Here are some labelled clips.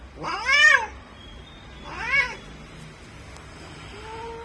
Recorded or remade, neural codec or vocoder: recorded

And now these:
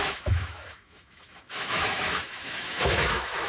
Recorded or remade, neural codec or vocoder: remade, autoencoder, DAC-VAE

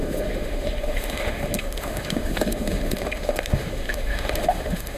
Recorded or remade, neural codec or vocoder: remade, autoencoder, DAC-VAE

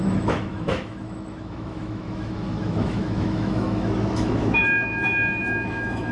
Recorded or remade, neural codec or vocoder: remade, autoencoder, DAC-VAE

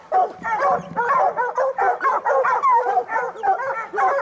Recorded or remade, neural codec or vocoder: recorded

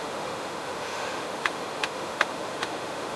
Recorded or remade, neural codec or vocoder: remade, autoencoder, DAC-VAE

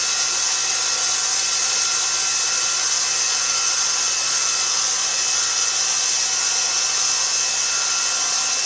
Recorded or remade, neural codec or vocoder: recorded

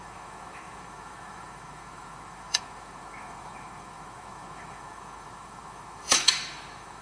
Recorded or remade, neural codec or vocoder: remade, autoencoder, DAC-VAE